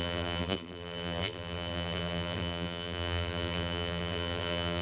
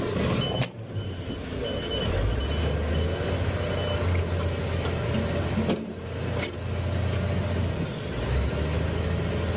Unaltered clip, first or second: second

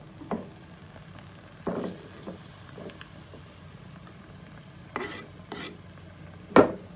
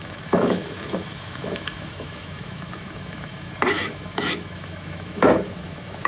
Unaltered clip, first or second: first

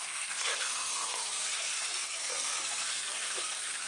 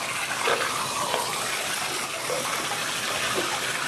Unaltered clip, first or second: second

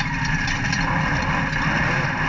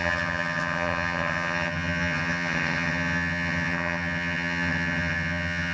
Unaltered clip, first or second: first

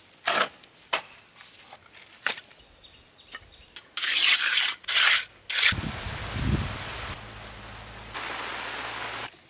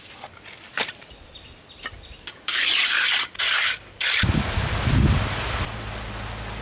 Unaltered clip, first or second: first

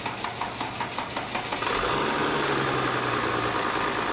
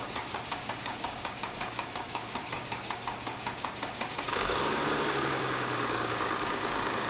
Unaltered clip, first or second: first